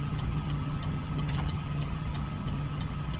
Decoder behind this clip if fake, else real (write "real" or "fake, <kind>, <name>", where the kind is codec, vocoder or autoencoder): fake, vocoder, HiFi-GAN